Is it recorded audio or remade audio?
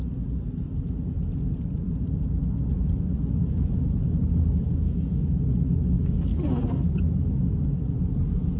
recorded